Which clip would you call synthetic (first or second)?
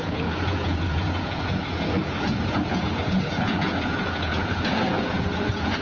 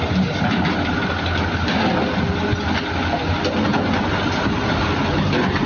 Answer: first